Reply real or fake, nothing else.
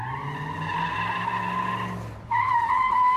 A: real